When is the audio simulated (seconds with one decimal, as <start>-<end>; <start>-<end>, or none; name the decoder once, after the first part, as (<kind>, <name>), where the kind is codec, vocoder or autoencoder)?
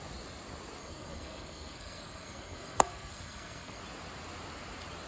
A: 0.8-3.8 (codec, SNAC)